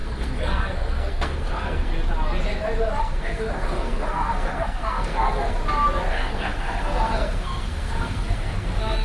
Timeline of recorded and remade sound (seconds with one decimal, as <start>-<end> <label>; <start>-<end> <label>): 0.0-1.9 remade; 1.9-3.0 recorded; 3.0-5.6 remade; 5.6-6.1 recorded; 6.1-9.0 remade

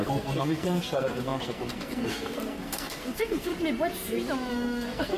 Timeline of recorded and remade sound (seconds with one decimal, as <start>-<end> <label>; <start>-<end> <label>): 0.0-3.5 remade; 3.5-4.5 recorded; 4.5-5.2 remade

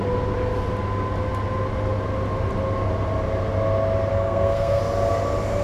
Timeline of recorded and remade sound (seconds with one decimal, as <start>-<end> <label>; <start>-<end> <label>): 0.0-4.1 recorded; 4.1-4.8 remade; 4.8-5.6 recorded

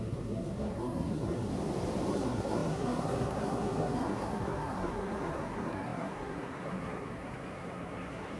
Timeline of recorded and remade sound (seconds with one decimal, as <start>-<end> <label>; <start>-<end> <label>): 0.0-1.5 remade; 1.5-2.1 recorded; 2.1-8.4 remade

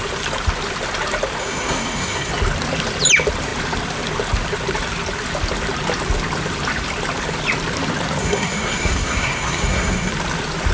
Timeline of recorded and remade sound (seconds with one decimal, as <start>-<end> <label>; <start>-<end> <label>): 0.0-1.4 recorded; 1.4-2.3 remade; 2.3-8.2 recorded; 8.2-10.1 remade; 10.1-10.7 recorded

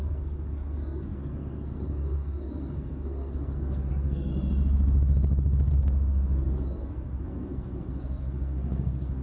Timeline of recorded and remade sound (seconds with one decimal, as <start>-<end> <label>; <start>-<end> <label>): 0.0-4.3 remade; 4.3-5.7 recorded; 5.7-9.2 remade